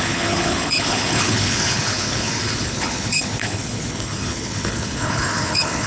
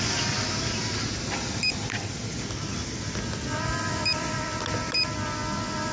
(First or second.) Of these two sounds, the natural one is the second